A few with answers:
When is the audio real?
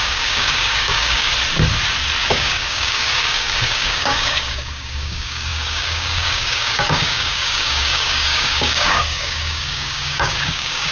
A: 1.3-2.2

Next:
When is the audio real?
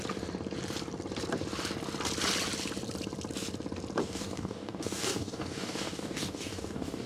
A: 0.0-4.0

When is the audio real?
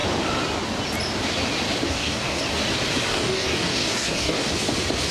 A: 0.0-1.9; 2.4-3.1; 4.5-5.1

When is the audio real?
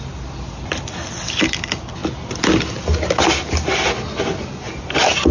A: 0.0-5.3